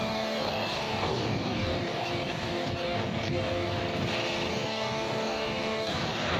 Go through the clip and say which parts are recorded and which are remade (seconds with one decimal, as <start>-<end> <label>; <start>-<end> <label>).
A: 0.0-3.8 remade; 3.8-4.5 recorded; 4.5-6.4 remade